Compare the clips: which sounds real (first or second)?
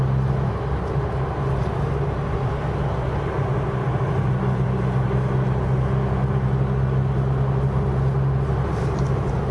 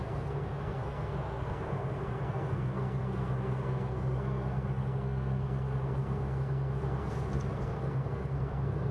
first